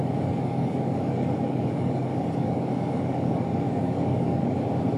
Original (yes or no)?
no